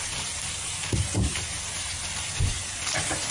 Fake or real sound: real